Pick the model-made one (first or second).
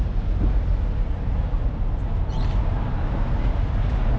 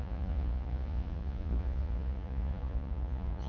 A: second